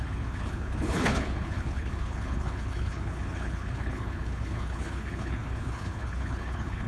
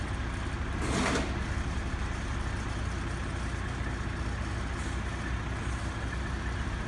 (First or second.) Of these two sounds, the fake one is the first